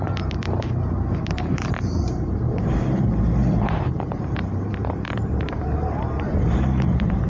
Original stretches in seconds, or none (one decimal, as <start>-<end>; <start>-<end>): none